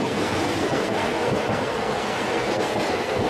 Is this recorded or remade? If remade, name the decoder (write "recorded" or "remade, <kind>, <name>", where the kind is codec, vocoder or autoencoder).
remade, codec, SNAC